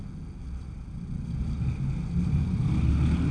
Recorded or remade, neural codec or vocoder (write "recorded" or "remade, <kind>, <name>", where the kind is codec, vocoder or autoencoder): recorded